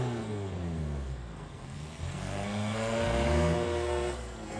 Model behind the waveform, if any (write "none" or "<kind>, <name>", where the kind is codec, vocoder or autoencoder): codec, SNAC